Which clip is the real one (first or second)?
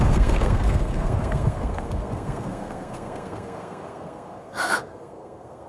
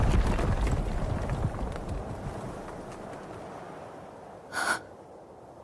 second